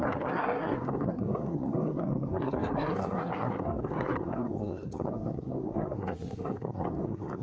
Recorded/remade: remade